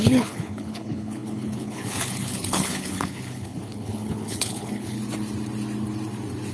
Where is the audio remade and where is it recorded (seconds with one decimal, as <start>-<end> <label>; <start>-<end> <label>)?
0.0-5.0 remade; 5.0-6.5 recorded